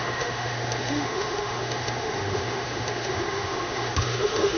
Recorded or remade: remade